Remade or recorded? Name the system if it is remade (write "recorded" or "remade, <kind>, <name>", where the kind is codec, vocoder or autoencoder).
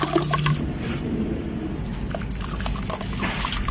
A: recorded